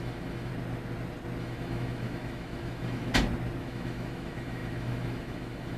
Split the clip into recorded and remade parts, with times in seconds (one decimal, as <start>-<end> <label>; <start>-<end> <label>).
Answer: 0.0-0.5 remade; 0.5-1.4 recorded; 1.4-3.1 remade; 3.1-3.6 recorded; 3.6-5.8 remade